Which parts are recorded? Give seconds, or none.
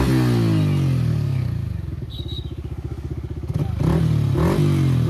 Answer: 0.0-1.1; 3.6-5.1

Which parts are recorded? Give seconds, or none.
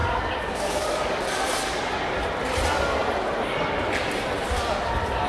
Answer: 1.2-5.3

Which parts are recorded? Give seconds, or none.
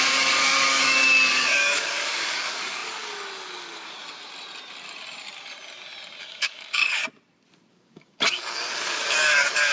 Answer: 4.0-6.2; 7.0-7.7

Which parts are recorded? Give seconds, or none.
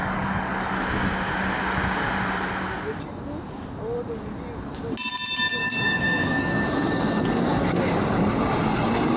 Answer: 0.7-5.6; 6.5-9.2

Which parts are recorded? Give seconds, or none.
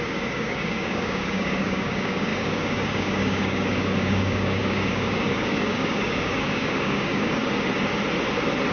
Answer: 7.4-8.7